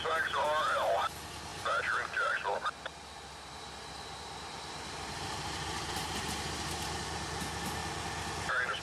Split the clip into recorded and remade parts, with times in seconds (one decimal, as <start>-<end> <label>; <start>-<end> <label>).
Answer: 0.0-1.5 recorded; 1.5-5.9 remade; 5.9-7.8 recorded; 7.8-8.8 remade